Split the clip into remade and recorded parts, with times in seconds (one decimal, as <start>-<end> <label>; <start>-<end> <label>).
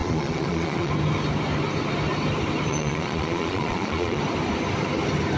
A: 0.0-0.9 remade; 0.9-2.7 recorded; 2.7-4.2 remade; 4.2-5.4 recorded